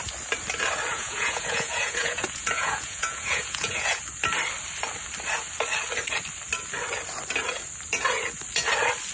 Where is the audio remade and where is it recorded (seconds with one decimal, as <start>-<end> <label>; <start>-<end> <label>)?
0.0-0.9 recorded; 0.9-4.0 remade; 4.0-9.1 recorded